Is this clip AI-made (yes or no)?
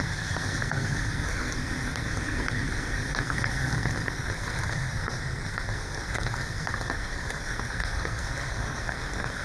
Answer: yes